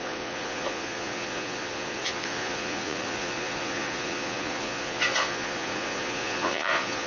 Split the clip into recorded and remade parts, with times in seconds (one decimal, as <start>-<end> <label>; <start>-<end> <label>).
0.0-7.1 remade